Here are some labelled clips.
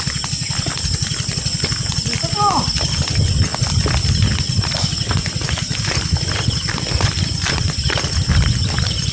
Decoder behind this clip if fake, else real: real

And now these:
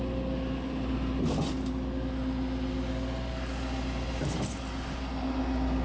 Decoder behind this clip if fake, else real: real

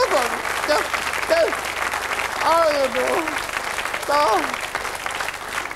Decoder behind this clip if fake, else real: real